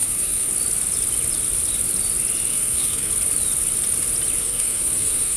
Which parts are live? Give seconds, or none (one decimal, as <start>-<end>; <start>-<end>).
0.5-2.5; 3.1-4.4